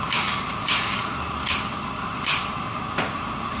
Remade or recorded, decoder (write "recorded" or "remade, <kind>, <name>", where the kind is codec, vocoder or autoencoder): recorded